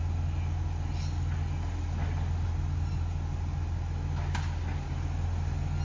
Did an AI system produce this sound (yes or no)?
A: no